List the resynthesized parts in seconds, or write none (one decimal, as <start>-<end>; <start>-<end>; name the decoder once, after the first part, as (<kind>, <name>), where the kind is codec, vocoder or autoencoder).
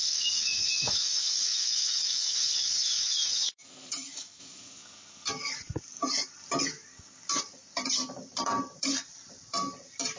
0.0-4.6 (autoencoder, DAC-VAE)